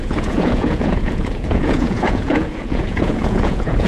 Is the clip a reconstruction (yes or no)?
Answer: yes